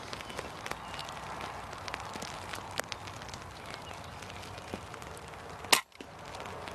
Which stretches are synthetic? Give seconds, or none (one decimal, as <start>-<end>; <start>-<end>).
none